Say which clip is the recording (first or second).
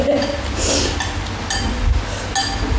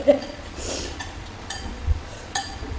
first